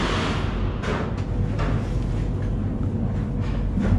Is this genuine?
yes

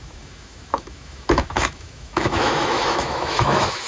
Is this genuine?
no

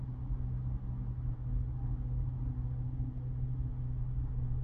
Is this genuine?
yes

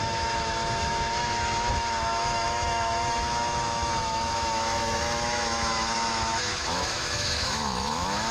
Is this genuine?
no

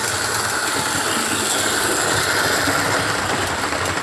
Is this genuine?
yes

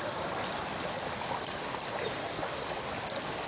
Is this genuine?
yes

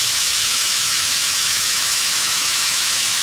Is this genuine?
no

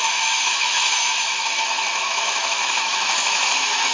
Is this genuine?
no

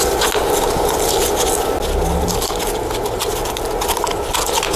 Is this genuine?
yes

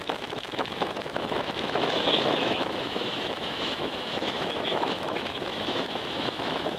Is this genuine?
no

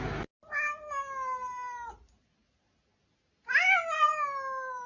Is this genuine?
yes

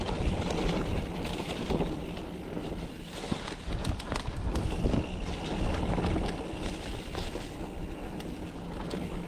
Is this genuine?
yes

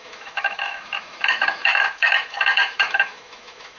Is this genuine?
no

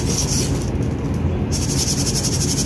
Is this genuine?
yes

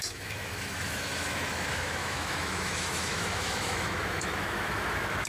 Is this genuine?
no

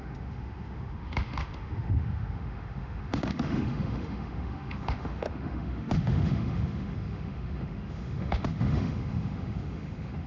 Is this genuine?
no